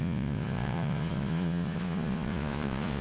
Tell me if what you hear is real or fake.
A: fake